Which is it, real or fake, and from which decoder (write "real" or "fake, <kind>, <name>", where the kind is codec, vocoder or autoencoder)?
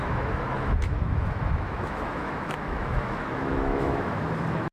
fake, autoencoder, DAC-VAE